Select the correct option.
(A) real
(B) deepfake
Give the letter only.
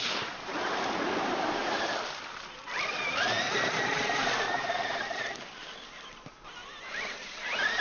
A